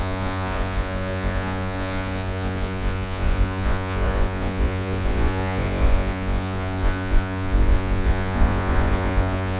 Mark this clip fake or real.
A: fake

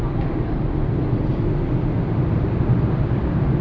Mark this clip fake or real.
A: real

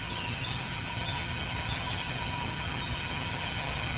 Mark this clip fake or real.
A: fake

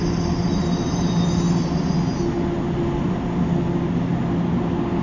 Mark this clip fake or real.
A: real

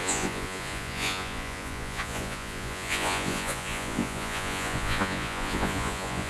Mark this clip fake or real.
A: fake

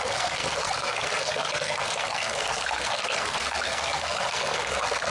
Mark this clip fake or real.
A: fake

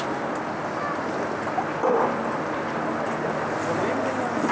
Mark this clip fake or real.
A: real